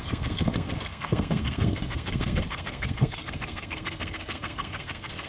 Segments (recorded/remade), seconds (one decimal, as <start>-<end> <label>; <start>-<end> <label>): 0.0-5.3 remade